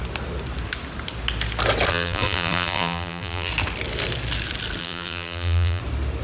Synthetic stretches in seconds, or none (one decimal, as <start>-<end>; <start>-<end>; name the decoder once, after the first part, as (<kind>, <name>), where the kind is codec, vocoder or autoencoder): 1.9-3.5 (vocoder, BigVGAN v2); 4.8-5.8